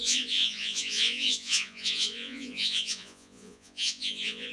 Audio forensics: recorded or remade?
remade